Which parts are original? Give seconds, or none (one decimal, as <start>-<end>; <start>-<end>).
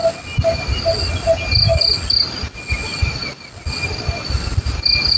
0.0-5.2